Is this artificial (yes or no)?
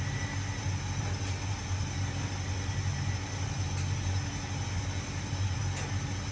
no